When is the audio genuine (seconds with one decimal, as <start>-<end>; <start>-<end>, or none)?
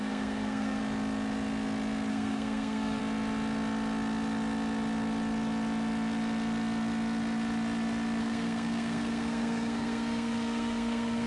0.8-2.1; 3.0-8.2